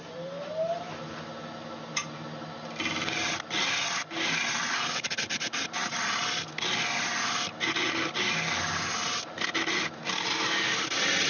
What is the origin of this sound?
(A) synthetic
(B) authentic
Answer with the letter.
B